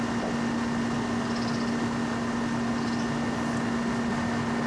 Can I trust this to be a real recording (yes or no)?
yes